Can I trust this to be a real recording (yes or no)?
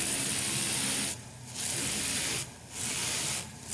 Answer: no